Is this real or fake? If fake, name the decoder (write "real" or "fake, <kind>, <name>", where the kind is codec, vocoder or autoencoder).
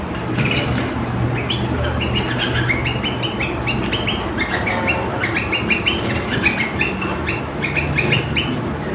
real